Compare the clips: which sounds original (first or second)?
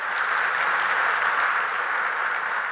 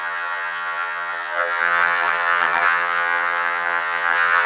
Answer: first